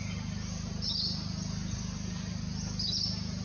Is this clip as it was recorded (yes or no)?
yes